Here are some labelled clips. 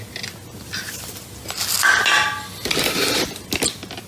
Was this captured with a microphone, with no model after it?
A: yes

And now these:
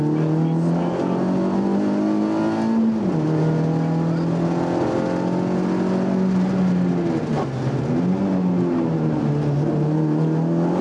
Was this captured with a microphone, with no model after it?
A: yes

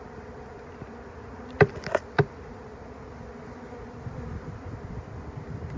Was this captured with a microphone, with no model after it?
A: no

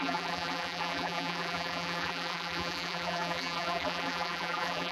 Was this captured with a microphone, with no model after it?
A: no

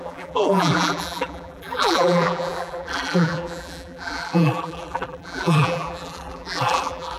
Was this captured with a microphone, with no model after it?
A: no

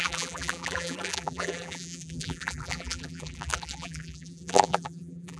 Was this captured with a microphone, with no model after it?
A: no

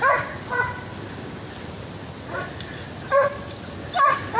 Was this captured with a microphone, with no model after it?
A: yes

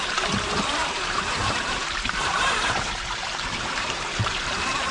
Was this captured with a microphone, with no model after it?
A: no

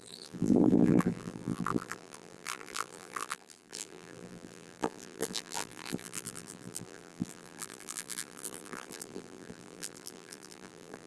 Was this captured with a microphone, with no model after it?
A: no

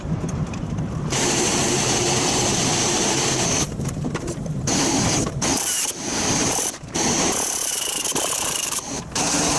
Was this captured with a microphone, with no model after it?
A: no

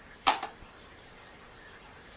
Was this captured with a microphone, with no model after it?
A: no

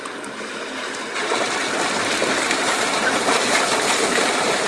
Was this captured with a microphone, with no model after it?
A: no